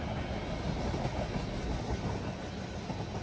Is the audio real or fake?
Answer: real